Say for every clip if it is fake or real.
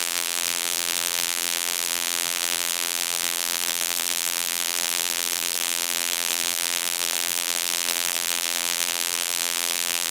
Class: fake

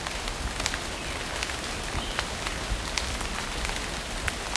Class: real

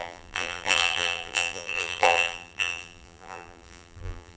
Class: fake